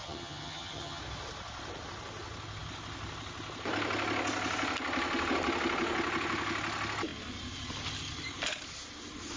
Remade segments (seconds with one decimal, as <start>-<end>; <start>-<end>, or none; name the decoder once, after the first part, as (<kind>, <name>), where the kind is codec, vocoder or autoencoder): 0.0-1.0 (vocoder, HiFi-GAN)